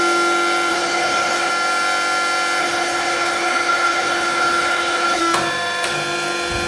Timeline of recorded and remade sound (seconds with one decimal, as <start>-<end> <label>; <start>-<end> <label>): 0.0-0.7 recorded; 0.7-1.5 remade; 1.5-2.6 recorded; 2.6-5.2 remade; 5.2-6.7 recorded